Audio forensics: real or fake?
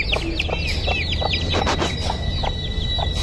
real